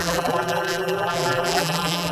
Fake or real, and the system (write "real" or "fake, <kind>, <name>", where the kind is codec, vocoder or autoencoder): fake, vocoder, BigVGAN v2